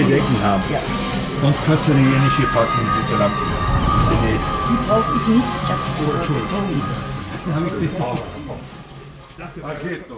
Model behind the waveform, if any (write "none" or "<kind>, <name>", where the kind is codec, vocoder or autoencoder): none